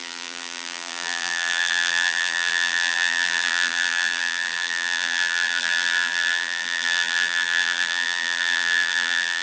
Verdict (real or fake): fake